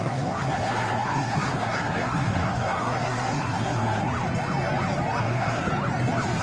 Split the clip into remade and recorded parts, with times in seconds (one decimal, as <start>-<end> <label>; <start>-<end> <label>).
0.0-4.1 remade; 4.1-5.2 recorded; 5.2-5.7 remade; 5.7-6.4 recorded